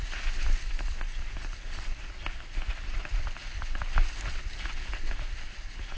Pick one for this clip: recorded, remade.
recorded